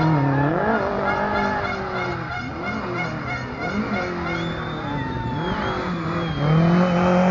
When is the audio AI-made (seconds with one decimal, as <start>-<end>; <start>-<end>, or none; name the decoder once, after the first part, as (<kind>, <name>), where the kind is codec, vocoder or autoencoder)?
none